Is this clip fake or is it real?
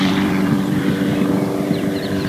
fake